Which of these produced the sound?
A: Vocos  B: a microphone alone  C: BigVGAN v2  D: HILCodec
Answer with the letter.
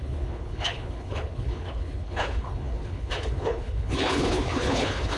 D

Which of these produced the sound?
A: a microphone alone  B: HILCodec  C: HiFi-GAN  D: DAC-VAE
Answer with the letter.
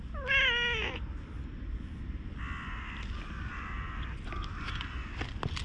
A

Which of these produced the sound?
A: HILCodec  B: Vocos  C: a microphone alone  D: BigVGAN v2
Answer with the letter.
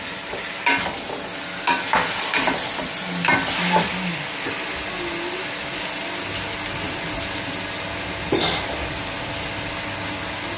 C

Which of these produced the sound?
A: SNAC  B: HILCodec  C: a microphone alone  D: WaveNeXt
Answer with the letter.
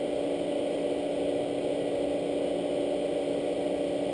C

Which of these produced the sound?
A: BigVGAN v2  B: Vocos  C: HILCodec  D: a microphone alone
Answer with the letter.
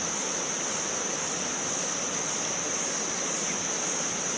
D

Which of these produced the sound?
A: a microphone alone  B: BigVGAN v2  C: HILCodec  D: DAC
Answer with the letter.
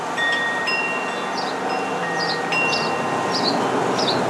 A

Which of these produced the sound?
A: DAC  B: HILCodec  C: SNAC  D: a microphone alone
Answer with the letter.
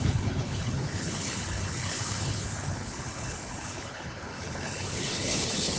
B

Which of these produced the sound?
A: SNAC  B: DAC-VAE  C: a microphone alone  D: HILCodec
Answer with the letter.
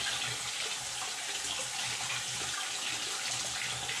C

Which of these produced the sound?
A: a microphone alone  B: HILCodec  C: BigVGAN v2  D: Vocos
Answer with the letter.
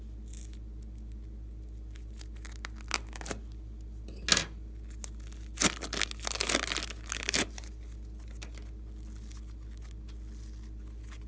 A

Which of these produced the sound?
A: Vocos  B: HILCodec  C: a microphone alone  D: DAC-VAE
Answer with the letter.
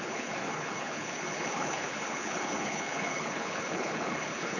B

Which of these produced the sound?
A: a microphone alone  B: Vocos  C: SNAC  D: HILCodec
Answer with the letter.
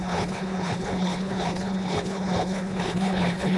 D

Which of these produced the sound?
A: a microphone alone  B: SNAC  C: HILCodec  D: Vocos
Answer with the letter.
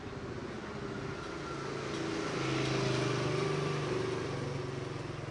A